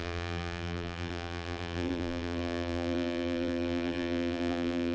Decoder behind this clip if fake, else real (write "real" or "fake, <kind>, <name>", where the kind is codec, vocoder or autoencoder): fake, vocoder, BigVGAN v2